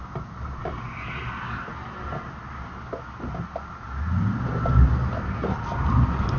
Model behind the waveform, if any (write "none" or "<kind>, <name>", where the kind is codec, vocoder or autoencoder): none